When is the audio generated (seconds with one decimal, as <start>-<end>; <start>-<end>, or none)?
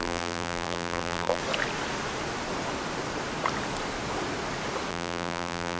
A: 0.0-1.4; 4.9-5.8